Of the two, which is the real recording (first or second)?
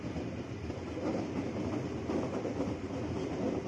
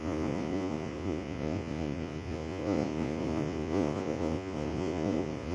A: first